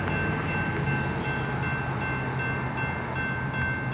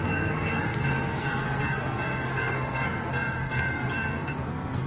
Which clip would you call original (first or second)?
first